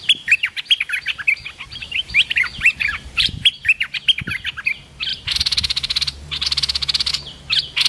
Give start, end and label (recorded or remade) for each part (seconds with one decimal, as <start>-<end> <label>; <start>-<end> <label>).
0.0-1.8 recorded; 1.8-3.3 remade; 3.3-5.1 recorded; 5.1-7.1 remade; 7.1-7.9 recorded